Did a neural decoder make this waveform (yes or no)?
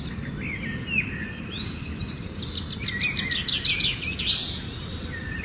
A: no